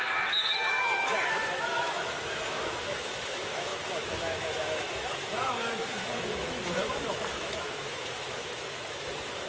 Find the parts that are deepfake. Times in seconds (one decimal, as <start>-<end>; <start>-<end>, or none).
0.0-9.5